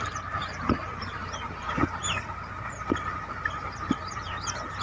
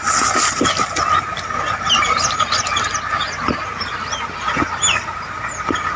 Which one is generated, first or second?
first